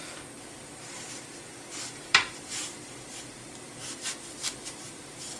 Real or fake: fake